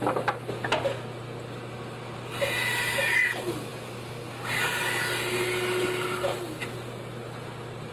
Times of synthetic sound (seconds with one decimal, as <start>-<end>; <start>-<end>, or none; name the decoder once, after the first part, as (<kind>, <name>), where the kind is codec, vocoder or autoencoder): none